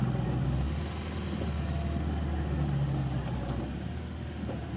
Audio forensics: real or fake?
real